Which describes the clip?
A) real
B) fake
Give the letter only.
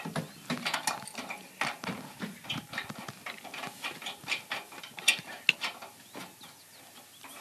A